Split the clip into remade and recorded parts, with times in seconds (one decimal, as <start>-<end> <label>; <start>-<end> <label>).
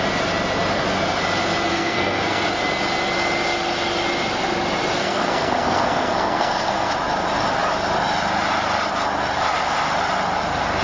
0.0-1.7 recorded; 1.7-2.5 remade; 2.5-5.0 recorded; 5.0-6.9 remade; 6.9-10.8 recorded